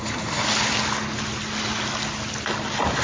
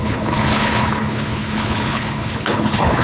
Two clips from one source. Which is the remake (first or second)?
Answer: second